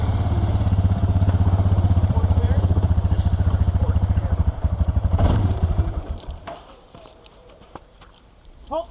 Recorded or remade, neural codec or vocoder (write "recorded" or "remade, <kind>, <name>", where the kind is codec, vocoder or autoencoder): remade, vocoder, BigVGAN v2